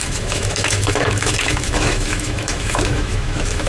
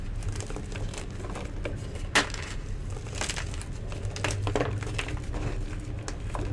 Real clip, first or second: second